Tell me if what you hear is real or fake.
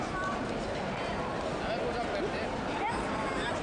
real